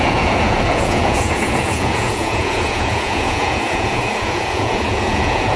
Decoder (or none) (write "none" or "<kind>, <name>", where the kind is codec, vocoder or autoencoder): vocoder, Vocos